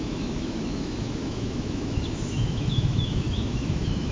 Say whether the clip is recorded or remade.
remade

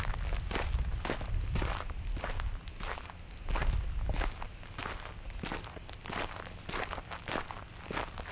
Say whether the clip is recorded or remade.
recorded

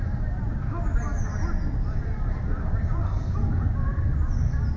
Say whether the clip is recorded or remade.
recorded